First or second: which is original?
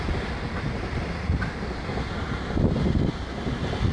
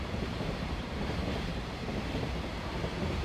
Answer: first